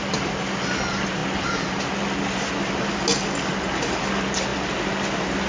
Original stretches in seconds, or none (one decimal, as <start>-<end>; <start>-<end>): 0.0-5.5